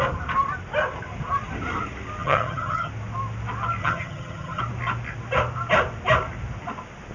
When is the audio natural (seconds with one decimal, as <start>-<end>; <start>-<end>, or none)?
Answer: 0.0-2.2; 2.9-3.8; 4.6-7.1